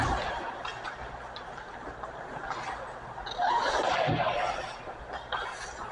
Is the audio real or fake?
real